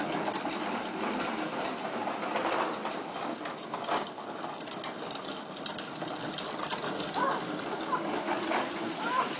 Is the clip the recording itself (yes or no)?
yes